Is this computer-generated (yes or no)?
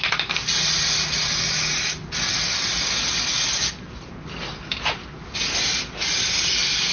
no